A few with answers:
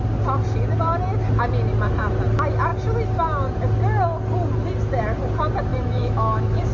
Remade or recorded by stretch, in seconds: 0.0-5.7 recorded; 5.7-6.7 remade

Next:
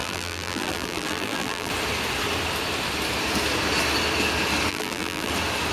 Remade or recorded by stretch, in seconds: 0.0-1.7 remade; 1.7-4.7 recorded; 4.7-5.3 remade; 5.3-5.7 recorded

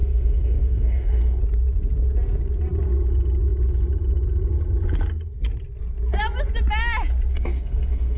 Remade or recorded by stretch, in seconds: 0.0-1.4 remade; 1.4-7.3 recorded; 7.3-8.2 remade

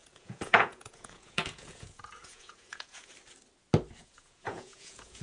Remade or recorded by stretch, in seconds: 0.0-3.1 remade; 3.1-4.0 recorded; 4.0-5.2 remade

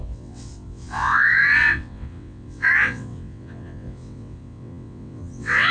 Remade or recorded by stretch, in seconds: 0.0-5.7 remade